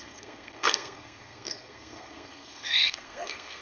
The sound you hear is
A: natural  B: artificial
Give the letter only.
B